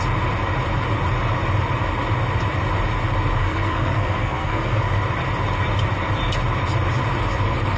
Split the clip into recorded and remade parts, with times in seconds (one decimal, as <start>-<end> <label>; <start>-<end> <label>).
0.0-3.4 recorded; 3.4-4.9 remade; 4.9-7.8 recorded